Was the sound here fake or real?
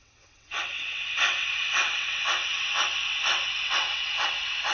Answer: fake